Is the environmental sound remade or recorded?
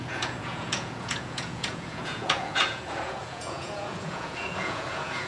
remade